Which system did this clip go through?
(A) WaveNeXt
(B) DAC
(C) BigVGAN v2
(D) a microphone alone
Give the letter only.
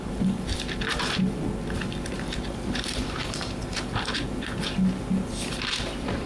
C